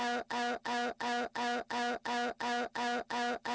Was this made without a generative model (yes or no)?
yes